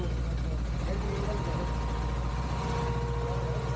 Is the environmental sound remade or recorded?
recorded